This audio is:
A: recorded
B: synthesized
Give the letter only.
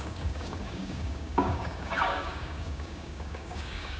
B